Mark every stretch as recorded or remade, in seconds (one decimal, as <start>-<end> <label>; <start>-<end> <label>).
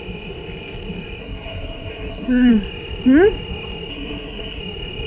0.0-1.2 recorded; 1.2-2.5 remade; 2.5-3.9 recorded; 3.9-4.6 remade; 4.6-5.1 recorded